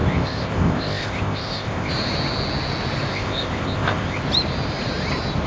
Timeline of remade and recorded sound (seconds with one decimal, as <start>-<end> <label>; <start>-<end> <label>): 0.0-1.9 remade; 1.9-3.1 recorded; 3.1-4.2 remade; 4.2-5.5 recorded